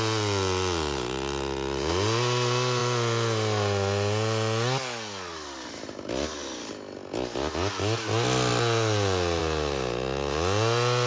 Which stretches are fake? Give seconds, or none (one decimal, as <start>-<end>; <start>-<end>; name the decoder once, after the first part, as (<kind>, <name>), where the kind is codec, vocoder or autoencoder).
none